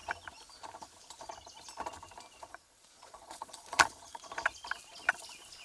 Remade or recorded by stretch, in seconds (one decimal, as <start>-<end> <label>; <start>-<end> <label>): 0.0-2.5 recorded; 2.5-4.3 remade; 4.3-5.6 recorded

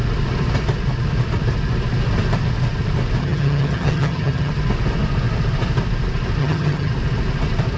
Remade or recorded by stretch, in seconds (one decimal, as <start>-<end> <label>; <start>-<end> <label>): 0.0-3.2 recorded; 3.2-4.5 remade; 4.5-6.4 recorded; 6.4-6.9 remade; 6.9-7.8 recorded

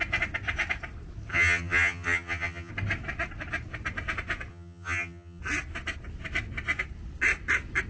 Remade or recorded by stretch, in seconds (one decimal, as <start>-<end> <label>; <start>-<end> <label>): 0.0-1.3 recorded; 1.3-2.7 remade; 2.7-4.5 recorded; 4.5-5.4 remade; 5.4-7.9 recorded

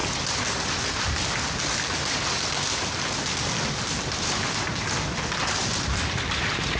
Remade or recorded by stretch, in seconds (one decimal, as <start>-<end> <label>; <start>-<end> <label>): 0.0-6.8 recorded

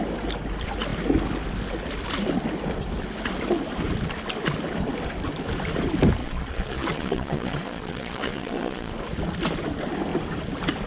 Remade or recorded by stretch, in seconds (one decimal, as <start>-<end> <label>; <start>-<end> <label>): 0.0-6.2 recorded; 6.2-8.9 remade; 8.9-10.9 recorded

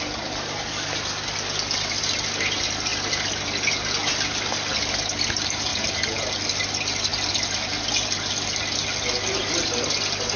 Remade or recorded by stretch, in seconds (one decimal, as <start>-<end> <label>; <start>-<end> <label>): 0.0-5.7 recorded; 5.7-6.4 remade; 6.4-10.4 recorded

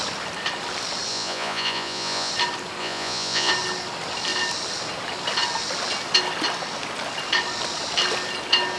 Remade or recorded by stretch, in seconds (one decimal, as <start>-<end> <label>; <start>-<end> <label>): 0.0-1.1 recorded; 1.1-2.3 remade; 2.3-2.8 recorded; 2.8-3.5 remade; 3.5-8.8 recorded

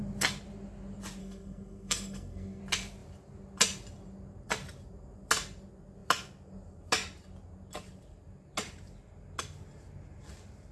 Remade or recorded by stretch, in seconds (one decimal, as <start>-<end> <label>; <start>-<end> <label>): 0.0-1.2 recorded; 1.2-2.6 remade; 2.6-10.7 recorded